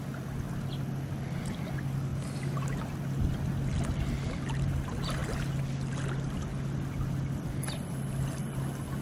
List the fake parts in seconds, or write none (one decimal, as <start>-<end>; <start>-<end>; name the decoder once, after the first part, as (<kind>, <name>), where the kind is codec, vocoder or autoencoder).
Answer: none